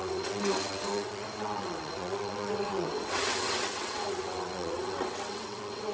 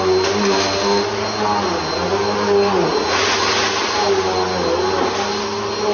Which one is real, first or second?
second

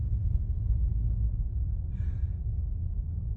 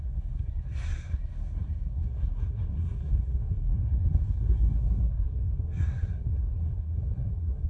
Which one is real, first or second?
first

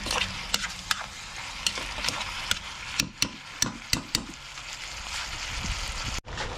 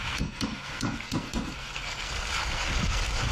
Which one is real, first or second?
first